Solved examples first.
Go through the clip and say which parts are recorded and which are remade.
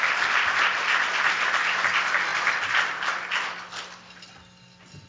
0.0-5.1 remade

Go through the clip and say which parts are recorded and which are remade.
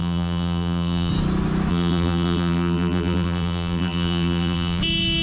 0.0-1.1 remade; 1.1-1.7 recorded; 1.7-4.8 remade; 4.8-5.2 recorded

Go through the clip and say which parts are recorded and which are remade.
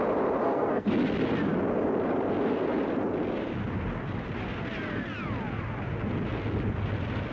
0.0-0.4 recorded; 0.4-0.9 remade; 0.9-7.3 recorded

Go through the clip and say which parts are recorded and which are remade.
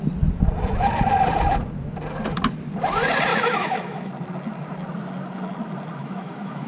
0.0-3.3 recorded; 3.3-4.1 remade; 4.1-6.0 recorded; 6.0-6.7 remade